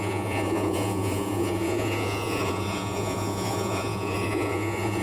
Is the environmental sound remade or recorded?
remade